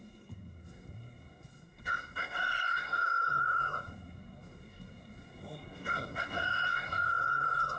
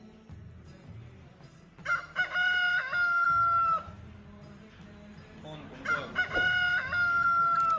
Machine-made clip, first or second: first